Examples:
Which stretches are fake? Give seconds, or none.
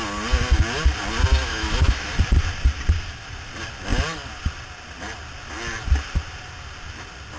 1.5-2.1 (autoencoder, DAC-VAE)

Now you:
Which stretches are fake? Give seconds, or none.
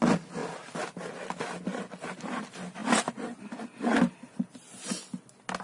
none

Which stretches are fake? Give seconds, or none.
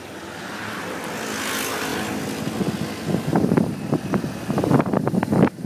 none